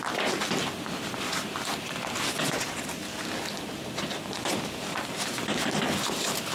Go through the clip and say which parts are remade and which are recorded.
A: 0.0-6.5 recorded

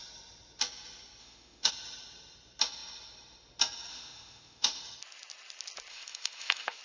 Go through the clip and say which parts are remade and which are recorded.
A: 0.0-1.2 recorded; 1.2-1.7 remade; 1.7-3.9 recorded; 3.9-4.8 remade; 4.8-5.9 recorded; 5.9-6.8 remade

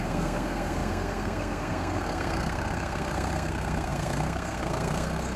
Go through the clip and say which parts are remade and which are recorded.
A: 0.0-5.4 remade

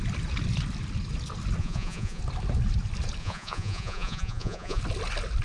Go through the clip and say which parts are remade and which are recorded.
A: 0.0-1.6 recorded; 1.6-2.2 remade; 2.2-3.2 recorded; 3.2-4.8 remade; 4.8-5.4 recorded